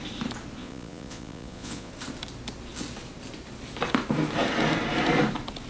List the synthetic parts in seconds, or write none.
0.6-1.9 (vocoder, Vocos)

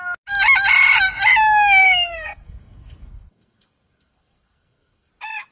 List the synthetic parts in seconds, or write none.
1.8-5.1 (codec, SNAC)

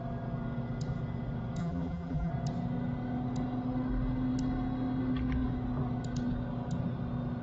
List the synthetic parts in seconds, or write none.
1.6-2.3 (vocoder, BigVGAN v2)

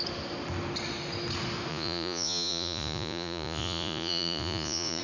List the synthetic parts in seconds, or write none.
1.7-5.0 (vocoder, Vocos)